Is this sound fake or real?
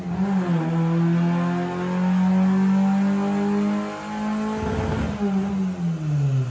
real